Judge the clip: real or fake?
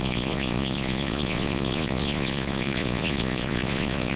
fake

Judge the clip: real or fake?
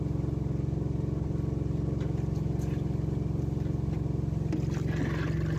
real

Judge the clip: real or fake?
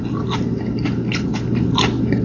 real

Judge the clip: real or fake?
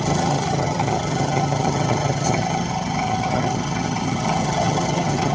fake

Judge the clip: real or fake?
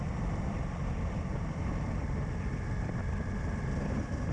fake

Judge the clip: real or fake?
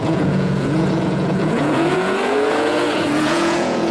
fake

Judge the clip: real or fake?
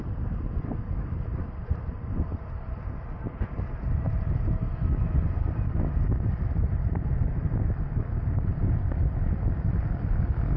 real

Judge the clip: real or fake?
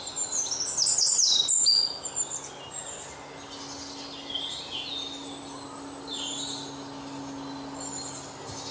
real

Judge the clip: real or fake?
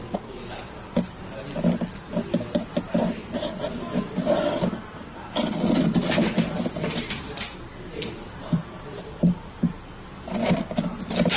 real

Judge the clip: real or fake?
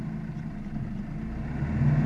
real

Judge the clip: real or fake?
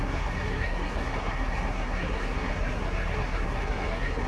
fake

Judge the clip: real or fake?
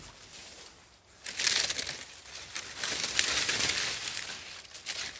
real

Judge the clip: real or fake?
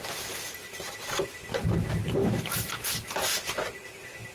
real